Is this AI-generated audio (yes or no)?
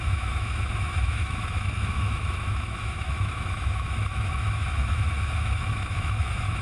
yes